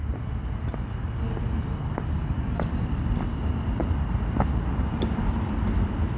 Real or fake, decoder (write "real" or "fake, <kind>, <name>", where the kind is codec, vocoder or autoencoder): real